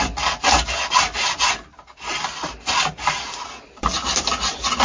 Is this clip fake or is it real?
real